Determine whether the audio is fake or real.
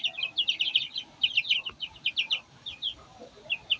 real